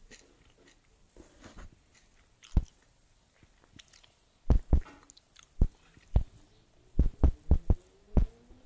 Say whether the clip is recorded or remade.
recorded